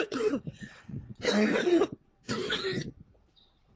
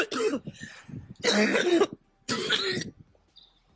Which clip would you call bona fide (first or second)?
second